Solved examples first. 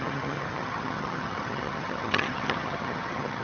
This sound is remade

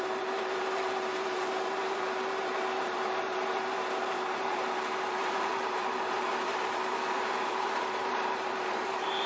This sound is remade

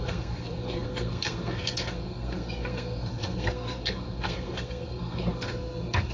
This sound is remade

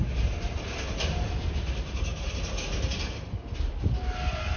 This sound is recorded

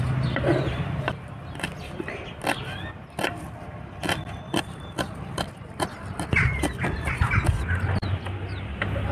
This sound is recorded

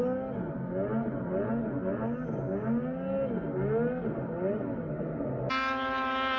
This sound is recorded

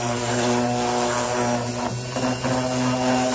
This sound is recorded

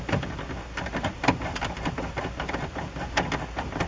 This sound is recorded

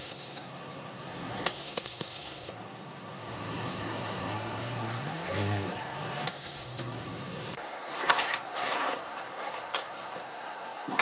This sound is remade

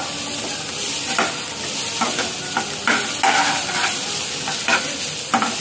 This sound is recorded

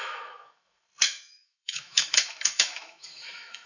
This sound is remade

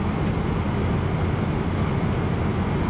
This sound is recorded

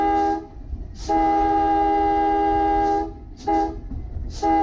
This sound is recorded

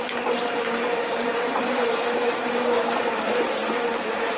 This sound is remade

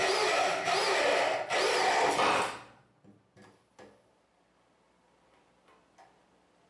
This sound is recorded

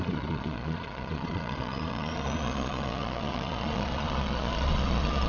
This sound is remade